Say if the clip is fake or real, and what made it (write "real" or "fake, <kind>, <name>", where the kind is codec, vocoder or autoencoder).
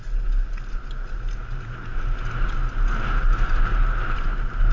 real